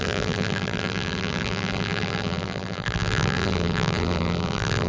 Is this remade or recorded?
remade